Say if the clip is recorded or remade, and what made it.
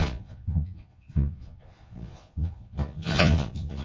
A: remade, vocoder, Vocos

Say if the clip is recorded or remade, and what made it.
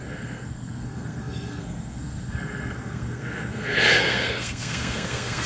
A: remade, codec, SNAC